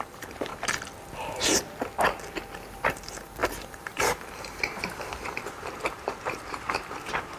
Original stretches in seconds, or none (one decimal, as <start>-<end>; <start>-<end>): 0.5-2.7